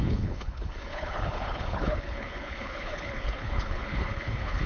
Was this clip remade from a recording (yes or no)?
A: yes